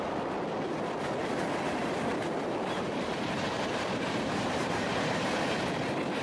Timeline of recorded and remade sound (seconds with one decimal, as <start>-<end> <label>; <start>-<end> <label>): 0.0-1.2 recorded; 1.2-4.9 remade; 4.9-6.2 recorded